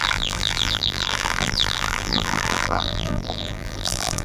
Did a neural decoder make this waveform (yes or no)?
yes